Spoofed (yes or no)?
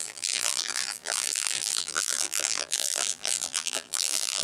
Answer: yes